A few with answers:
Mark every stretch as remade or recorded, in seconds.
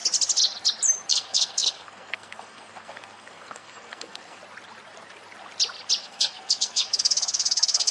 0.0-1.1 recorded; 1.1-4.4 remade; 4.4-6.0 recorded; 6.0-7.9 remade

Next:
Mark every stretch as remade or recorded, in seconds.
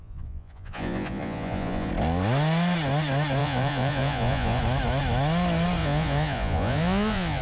0.0-1.9 remade; 1.9-3.4 recorded; 3.4-4.6 remade; 4.6-5.8 recorded; 5.8-7.4 remade